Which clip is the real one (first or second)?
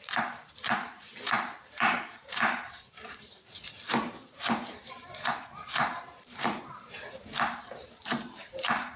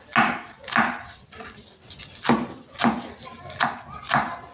second